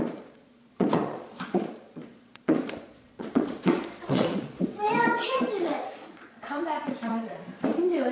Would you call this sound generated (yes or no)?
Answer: yes